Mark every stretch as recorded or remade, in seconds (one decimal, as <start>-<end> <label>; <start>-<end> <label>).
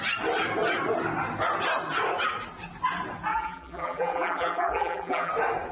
0.0-3.3 recorded; 3.3-5.3 remade; 5.3-5.7 recorded